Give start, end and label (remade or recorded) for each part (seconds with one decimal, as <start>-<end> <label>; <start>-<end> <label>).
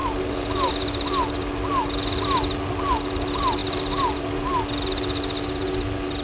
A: 0.0-6.2 recorded